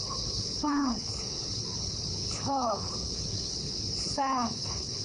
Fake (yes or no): yes